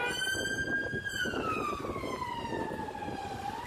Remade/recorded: recorded